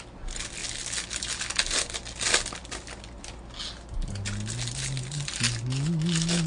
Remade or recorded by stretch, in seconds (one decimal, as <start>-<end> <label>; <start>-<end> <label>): 0.0-6.5 recorded